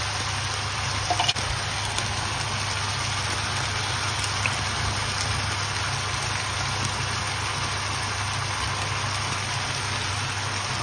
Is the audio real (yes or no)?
yes